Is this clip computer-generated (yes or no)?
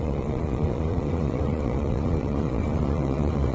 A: yes